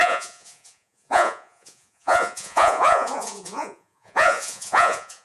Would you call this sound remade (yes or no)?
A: yes